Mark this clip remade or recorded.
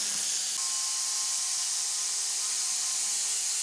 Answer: recorded